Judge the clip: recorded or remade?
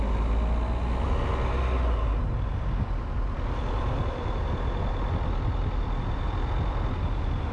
recorded